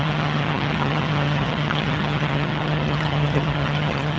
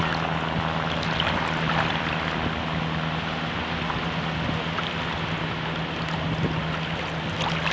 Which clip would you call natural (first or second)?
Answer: second